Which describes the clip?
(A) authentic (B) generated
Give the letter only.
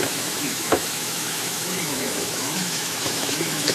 B